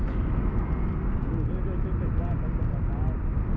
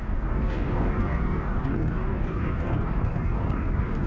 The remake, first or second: second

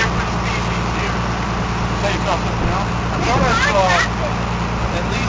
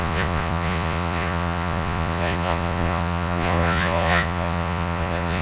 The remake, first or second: second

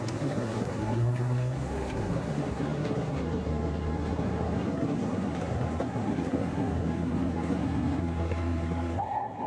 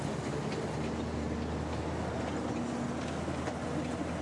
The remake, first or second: first